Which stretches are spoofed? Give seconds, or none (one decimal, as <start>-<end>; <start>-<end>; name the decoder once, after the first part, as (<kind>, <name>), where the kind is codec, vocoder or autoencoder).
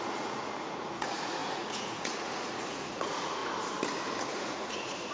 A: 0.0-3.4 (vocoder, Vocos); 4.2-5.1